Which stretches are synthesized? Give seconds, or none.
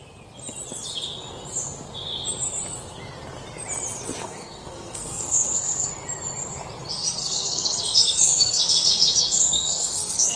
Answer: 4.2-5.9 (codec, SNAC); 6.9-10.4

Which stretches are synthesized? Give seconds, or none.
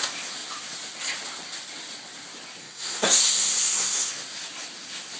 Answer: 2.6-4.1 (codec, SNAC)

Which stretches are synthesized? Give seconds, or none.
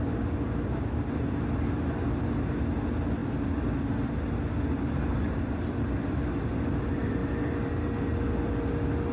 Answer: none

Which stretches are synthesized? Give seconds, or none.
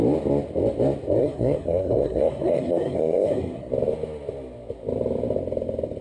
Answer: 1.2-3.7 (codec, SNAC)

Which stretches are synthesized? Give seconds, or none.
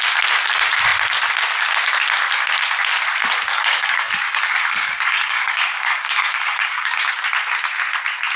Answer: 3.5-7.0 (codec, DAC)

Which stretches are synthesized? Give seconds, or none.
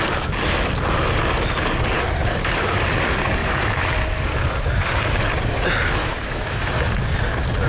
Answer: 3.4-3.9 (autoencoder, DAC-VAE); 6.0-6.6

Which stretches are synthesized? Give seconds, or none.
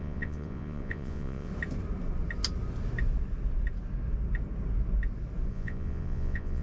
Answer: 0.0-1.5 (vocoder, Vocos); 5.5-6.6